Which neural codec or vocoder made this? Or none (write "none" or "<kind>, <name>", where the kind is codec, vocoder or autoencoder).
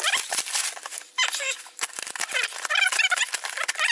none